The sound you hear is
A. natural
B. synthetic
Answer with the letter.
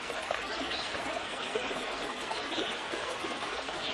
B